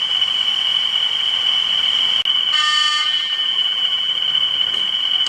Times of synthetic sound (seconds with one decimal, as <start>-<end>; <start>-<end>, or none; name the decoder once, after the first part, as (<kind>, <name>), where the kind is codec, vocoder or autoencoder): 2.9-4.1 (vocoder, BigVGAN v2)